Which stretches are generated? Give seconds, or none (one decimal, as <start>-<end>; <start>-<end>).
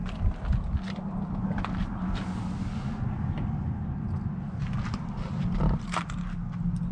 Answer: none